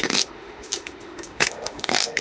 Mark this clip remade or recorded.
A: remade